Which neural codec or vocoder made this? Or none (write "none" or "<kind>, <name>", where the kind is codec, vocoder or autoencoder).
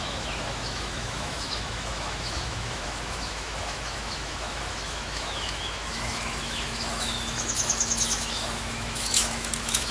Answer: autoencoder, DAC-VAE